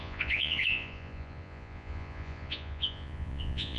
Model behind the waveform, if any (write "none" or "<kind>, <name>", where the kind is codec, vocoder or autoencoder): vocoder, Vocos